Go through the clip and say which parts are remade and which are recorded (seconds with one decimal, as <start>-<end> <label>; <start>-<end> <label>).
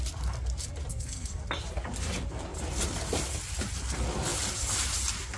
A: 0.0-0.9 recorded; 0.9-1.4 remade; 1.4-5.4 recorded